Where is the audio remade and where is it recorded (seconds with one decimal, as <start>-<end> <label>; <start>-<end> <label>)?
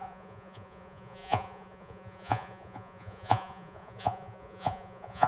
0.0-5.3 remade